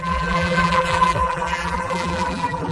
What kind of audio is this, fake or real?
fake